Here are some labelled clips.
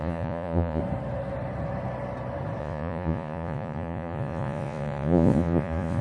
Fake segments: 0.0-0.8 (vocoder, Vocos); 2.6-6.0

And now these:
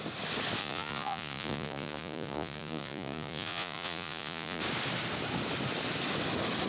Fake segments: 0.6-4.6 (vocoder, Vocos)

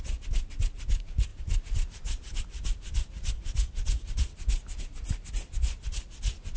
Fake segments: none

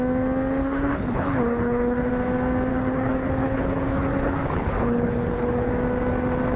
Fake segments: 0.6-2.1 (codec, HILCodec); 2.7-5.7